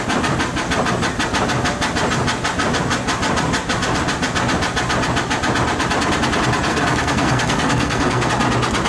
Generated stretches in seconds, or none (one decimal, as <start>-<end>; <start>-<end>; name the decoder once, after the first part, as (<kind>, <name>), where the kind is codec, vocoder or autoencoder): 6.7-8.3 (codec, SNAC)